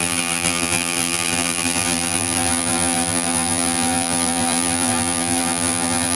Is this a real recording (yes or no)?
no